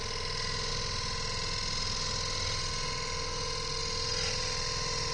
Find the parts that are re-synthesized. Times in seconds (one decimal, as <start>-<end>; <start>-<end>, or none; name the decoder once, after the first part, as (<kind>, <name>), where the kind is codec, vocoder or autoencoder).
none